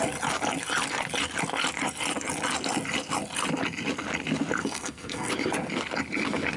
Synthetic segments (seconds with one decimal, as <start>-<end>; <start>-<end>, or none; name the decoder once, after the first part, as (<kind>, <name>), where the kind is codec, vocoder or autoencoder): 4.6-5.3 (codec, SNAC)